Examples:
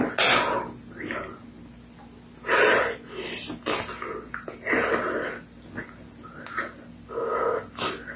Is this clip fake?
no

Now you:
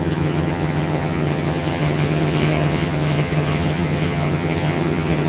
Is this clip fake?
yes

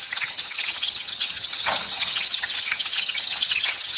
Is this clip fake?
yes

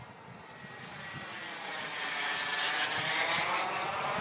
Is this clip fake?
no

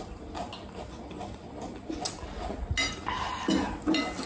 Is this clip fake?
no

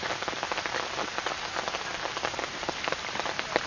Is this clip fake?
no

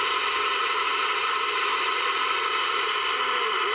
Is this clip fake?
no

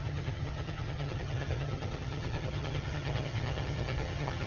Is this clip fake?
yes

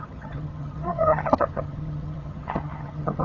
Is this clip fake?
yes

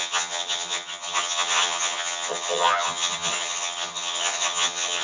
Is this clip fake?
yes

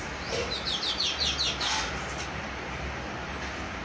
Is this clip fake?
no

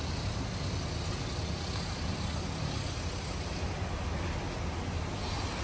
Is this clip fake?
no